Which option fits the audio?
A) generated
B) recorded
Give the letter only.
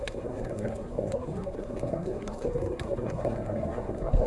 A